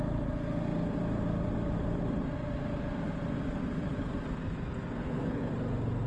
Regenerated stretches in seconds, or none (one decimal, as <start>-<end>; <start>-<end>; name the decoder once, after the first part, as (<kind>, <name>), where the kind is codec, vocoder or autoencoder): 5.0-5.5 (codec, HILCodec)